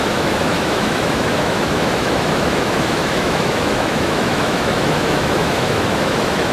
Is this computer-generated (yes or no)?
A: yes